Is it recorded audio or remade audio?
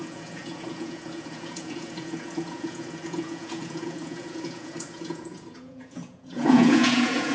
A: remade